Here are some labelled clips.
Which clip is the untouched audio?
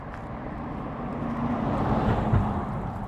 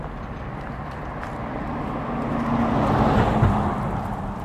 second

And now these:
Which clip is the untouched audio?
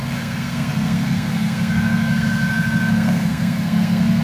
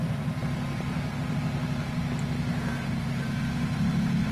second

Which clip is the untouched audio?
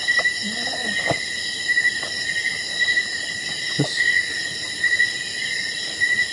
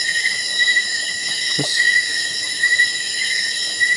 first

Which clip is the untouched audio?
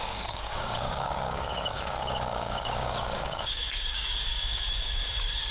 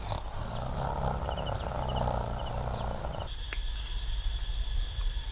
second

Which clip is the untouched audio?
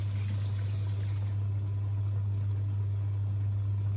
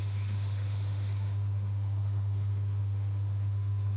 first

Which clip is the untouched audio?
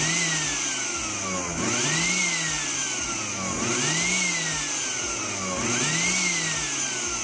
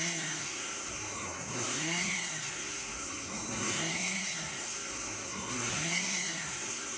first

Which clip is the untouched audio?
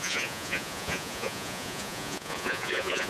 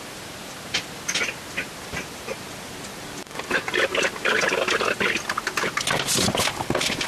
second